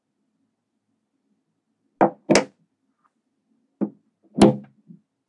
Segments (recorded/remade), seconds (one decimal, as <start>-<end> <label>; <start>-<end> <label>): 0.0-5.3 recorded